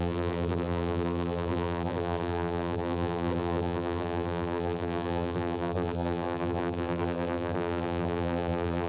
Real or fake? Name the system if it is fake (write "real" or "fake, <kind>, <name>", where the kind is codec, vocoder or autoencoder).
fake, vocoder, BigVGAN v2